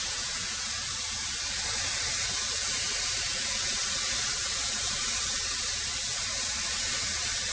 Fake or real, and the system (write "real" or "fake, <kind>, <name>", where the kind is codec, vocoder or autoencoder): real